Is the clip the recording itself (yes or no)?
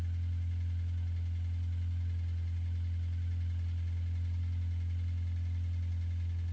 yes